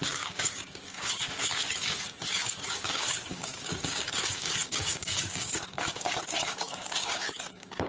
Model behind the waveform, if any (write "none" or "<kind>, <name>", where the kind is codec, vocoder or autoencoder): codec, DAC